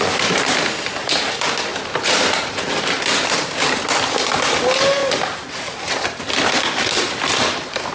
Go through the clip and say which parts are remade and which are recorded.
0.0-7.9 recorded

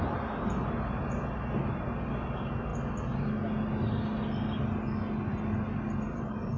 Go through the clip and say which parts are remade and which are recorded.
0.0-6.6 recorded

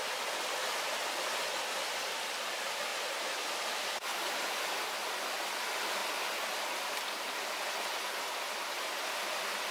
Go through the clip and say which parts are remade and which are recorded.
0.0-9.7 recorded

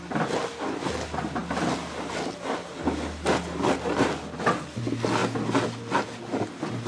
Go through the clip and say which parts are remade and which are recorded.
0.0-6.9 recorded